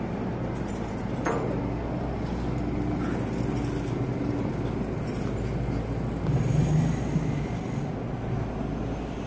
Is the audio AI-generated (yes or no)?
no